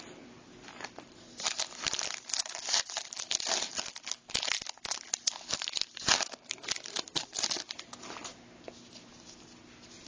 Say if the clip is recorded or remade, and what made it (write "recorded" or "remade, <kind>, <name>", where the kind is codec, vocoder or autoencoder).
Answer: recorded